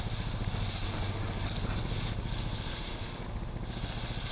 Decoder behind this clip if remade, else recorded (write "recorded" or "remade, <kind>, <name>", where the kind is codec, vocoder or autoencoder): remade, vocoder, BigVGAN v2